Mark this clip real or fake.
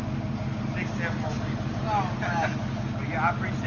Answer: real